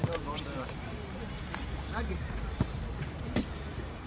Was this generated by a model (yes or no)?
yes